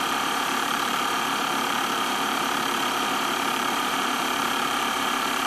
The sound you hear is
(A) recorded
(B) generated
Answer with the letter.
B